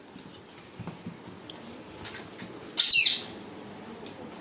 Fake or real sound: real